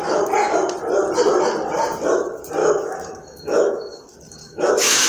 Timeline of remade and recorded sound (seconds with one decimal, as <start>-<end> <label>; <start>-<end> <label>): 0.0-2.6 recorded; 2.6-4.0 remade; 4.0-4.4 recorded; 4.4-5.1 remade